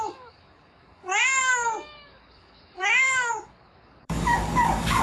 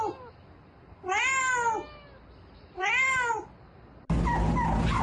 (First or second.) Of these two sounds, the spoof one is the first